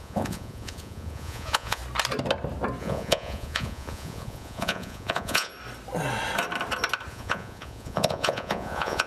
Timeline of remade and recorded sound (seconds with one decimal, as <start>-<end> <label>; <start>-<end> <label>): 0.0-1.8 remade; 1.8-2.8 recorded; 2.8-5.5 remade; 5.5-7.1 recorded; 7.1-9.1 remade